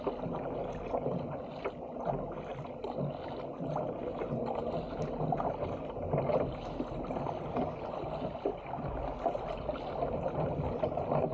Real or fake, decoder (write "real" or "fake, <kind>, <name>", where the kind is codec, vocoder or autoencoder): real